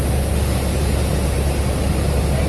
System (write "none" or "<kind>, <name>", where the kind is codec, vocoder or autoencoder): none